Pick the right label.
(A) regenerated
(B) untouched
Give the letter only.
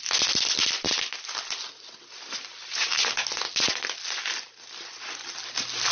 B